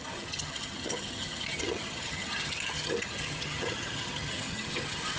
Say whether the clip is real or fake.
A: fake